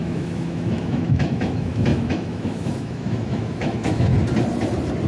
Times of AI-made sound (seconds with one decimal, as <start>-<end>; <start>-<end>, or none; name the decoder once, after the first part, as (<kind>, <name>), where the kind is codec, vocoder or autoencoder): 0.0-4.1 (autoencoder, DAC-VAE)

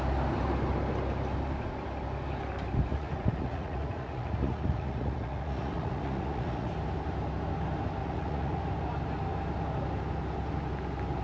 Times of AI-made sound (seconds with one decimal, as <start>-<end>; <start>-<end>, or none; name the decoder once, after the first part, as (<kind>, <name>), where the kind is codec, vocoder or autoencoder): 2.9-6.7 (vocoder, Vocos); 8.0-8.6

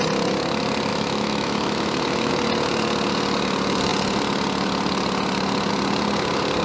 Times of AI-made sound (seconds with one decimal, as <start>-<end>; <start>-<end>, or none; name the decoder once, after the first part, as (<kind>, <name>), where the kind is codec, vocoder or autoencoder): 0.9-2.3 (autoencoder, DAC-VAE)

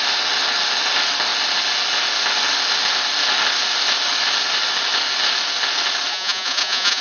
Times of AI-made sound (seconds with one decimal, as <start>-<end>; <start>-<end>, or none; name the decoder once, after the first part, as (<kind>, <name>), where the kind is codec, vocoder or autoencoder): 6.1-7.0 (vocoder, Vocos)

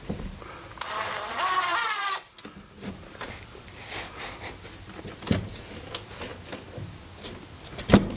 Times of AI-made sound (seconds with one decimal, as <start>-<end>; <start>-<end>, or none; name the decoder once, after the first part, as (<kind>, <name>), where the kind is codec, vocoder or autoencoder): 1.7-5.1 (vocoder, BigVGAN v2); 6.3-8.2

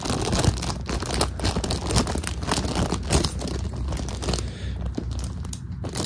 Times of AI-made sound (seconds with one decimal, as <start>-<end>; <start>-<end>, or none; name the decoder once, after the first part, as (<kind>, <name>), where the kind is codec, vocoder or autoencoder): none

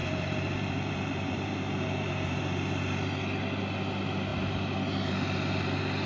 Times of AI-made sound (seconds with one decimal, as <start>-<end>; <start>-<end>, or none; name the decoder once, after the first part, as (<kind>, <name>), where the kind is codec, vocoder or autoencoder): 0.0-2.4 (vocoder, BigVGAN v2)

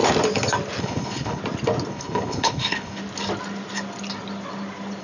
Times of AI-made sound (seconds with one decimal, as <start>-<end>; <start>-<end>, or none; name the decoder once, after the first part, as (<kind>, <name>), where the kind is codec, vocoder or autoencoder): 0.8-1.4 (codec, HILCodec); 1.9-3.0